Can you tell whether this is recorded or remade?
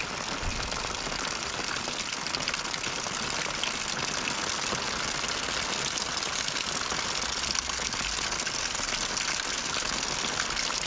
recorded